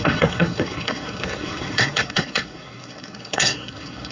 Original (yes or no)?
no